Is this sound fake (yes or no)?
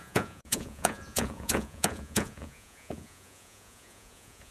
yes